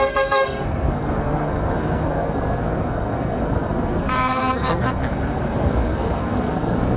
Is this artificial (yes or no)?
yes